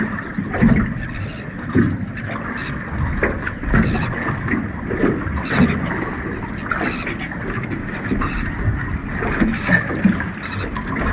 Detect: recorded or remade recorded